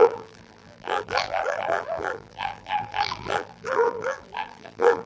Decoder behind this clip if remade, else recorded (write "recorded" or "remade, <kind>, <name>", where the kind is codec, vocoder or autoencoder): remade, vocoder, BigVGAN v2